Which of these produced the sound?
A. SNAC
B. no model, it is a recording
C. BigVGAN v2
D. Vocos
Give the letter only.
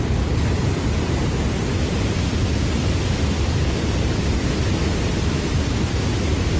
B